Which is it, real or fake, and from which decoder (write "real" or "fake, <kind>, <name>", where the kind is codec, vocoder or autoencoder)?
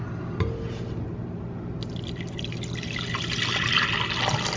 real